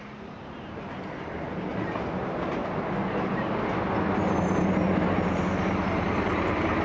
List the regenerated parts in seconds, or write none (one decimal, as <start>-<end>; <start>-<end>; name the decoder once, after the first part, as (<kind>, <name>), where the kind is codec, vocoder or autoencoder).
none